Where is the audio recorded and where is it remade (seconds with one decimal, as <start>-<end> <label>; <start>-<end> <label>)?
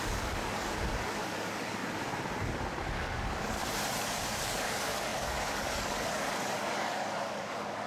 0.0-1.8 remade; 1.8-2.8 recorded; 2.8-3.6 remade; 3.6-4.3 recorded; 4.3-7.9 remade